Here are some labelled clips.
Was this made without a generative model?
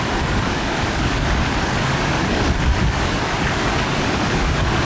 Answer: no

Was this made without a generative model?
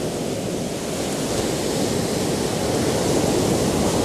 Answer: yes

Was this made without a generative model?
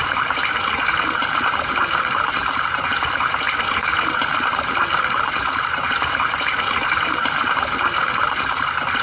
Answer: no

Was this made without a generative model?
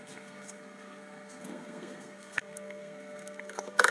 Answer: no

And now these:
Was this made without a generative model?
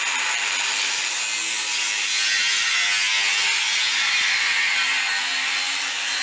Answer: yes